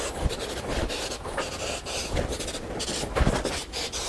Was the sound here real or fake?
fake